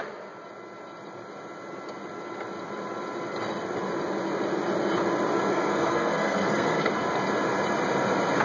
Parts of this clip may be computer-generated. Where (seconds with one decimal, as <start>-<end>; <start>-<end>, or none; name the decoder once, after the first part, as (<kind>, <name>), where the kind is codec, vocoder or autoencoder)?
5.5-6.9 (codec, SNAC)

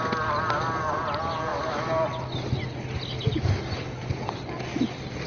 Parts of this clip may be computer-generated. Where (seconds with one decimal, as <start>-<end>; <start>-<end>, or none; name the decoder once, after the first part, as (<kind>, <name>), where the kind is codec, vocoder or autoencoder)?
none